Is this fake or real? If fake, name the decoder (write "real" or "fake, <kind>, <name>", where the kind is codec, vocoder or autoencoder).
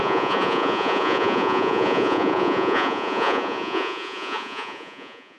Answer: fake, vocoder, Vocos